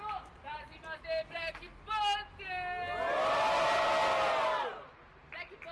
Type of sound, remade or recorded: recorded